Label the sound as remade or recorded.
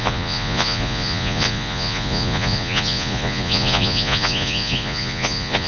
remade